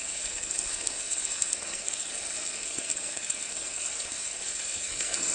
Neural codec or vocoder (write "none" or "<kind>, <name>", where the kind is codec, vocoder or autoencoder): codec, SNAC